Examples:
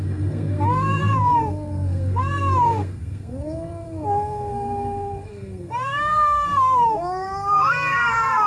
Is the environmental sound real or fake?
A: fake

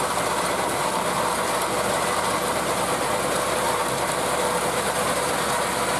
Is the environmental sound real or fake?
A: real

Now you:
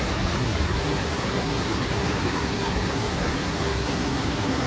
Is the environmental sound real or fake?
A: fake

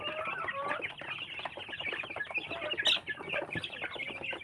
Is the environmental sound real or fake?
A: real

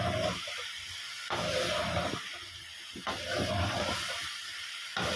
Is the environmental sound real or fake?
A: real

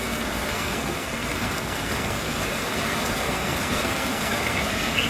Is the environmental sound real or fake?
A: fake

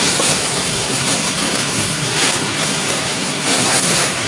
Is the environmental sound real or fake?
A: fake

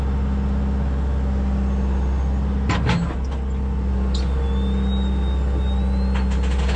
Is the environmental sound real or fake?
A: real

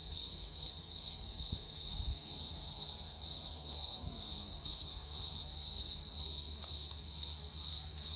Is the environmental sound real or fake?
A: fake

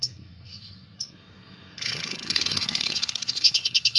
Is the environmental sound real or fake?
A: fake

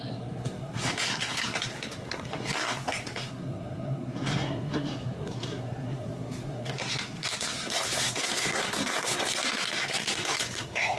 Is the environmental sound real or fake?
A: fake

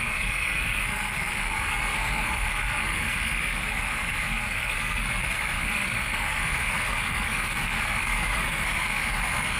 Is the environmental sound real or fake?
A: fake